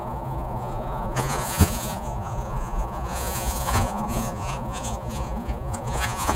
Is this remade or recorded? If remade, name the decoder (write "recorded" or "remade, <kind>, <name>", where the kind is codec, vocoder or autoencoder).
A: remade, vocoder, Vocos